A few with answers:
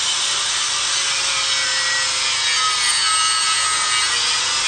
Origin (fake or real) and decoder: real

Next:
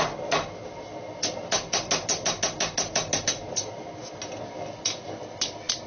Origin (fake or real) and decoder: real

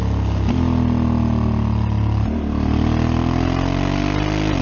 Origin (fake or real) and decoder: real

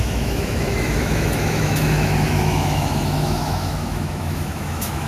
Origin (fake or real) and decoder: fake, autoencoder, DAC-VAE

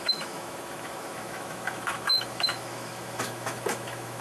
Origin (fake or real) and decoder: fake, autoencoder, DAC-VAE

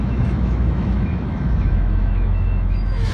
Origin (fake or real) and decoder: fake, autoencoder, DAC-VAE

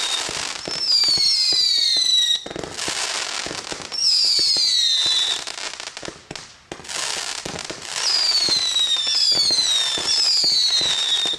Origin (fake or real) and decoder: real